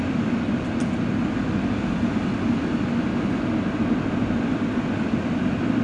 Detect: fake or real real